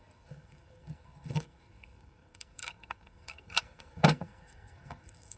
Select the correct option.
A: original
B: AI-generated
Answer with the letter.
B